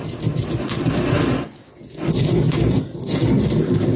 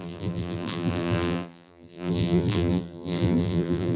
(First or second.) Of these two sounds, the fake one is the second